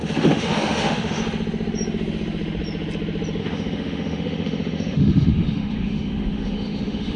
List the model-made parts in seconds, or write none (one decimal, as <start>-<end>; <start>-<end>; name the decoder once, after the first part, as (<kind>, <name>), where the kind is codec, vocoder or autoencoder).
0.0-1.2 (autoencoder, DAC-VAE); 3.4-7.2